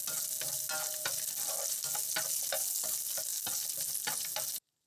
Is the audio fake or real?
real